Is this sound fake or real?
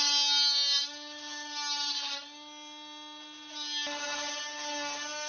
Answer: real